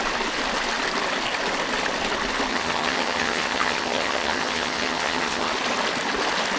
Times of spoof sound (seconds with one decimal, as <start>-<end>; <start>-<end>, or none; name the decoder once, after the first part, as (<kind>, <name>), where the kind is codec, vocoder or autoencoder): 2.5-5.5 (vocoder, HiFi-GAN)